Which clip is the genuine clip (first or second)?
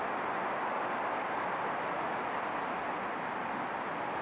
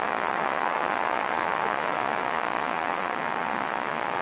first